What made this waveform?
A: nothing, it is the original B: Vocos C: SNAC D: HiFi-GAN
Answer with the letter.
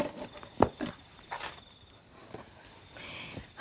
A